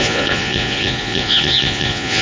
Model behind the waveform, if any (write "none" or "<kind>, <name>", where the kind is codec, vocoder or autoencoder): vocoder, Vocos